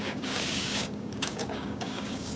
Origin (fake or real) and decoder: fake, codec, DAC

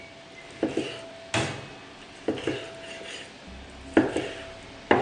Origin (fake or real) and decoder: real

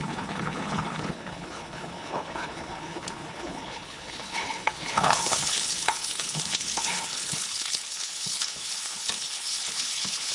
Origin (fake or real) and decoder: fake, codec, HILCodec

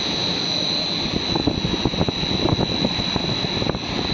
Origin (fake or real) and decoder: real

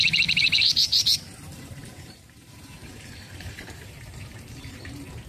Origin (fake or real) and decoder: fake, vocoder, BigVGAN v2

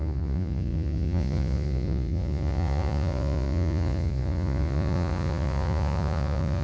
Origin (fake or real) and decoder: fake, vocoder, Vocos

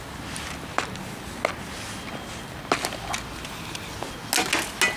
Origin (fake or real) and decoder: real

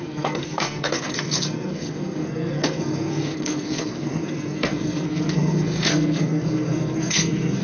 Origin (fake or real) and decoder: fake, codec, SNAC